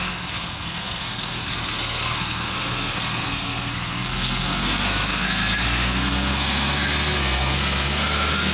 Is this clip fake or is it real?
fake